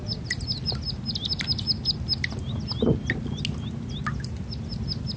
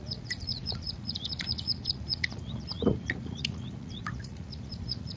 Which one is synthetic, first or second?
second